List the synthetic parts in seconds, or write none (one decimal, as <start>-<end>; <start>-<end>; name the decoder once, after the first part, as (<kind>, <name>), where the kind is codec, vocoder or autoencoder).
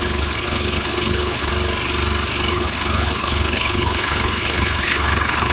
0.0-1.5 (codec, HILCodec); 2.5-5.5